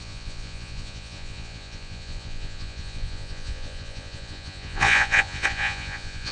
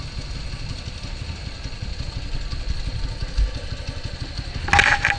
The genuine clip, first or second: second